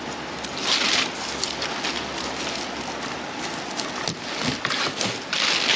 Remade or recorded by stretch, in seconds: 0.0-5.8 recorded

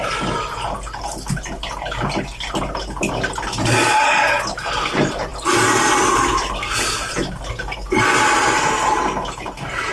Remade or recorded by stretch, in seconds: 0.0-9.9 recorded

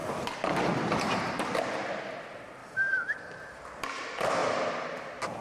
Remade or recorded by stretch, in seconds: 0.0-1.1 remade; 1.1-2.6 recorded; 2.6-3.2 remade; 3.2-5.4 recorded

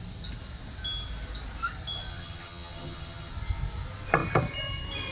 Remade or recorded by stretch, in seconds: 0.0-2.1 recorded; 2.1-3.3 remade; 3.3-5.1 recorded

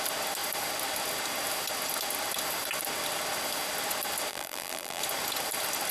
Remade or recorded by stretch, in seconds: 0.0-4.3 recorded; 4.3-5.0 remade; 5.0-5.9 recorded